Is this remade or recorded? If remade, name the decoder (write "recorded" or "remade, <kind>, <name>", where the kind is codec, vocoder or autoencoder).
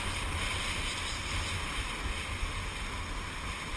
recorded